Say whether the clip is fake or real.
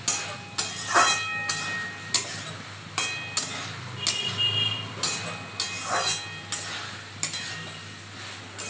real